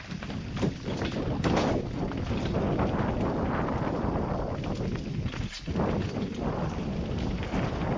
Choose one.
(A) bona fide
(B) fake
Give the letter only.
A